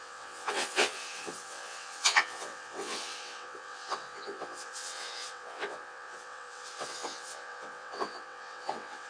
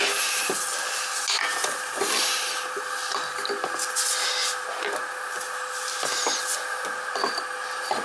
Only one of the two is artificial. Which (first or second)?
first